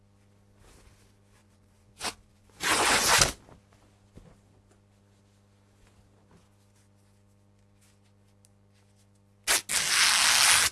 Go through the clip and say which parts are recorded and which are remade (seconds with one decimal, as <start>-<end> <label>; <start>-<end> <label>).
0.0-1.4 recorded; 1.4-3.1 remade; 3.1-10.7 recorded